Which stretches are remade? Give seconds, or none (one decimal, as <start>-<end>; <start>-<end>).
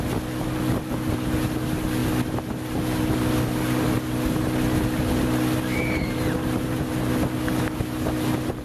none